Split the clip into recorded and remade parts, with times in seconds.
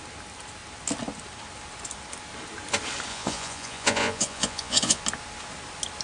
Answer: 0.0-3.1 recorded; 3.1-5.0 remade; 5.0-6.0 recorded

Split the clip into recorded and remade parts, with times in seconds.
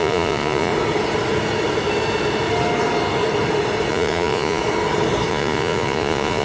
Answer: 0.0-0.7 remade; 0.7-3.9 recorded; 3.9-4.6 remade; 4.6-5.3 recorded; 5.3-6.4 remade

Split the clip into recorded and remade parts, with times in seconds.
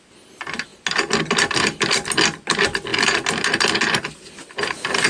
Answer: 0.0-5.1 recorded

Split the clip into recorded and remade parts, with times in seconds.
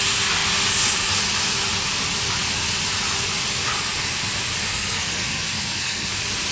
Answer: 0.0-4.7 recorded; 4.7-6.1 remade; 6.1-6.5 recorded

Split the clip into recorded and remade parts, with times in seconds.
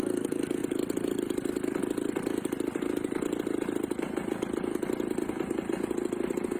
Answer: 0.0-6.6 recorded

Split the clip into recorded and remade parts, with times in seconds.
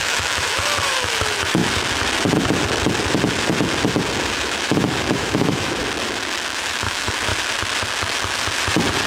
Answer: 0.0-1.6 remade; 1.6-4.4 recorded; 4.4-5.8 remade; 5.8-6.6 recorded; 6.6-7.3 remade; 7.3-9.1 recorded